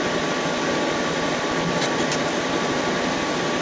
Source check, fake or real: real